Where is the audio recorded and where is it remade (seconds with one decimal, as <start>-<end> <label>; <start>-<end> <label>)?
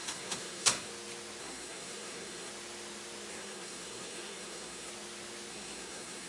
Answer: 0.0-0.9 remade; 0.9-1.4 recorded; 1.4-2.5 remade; 2.5-3.3 recorded; 3.3-4.9 remade; 4.9-5.5 recorded; 5.5-6.3 remade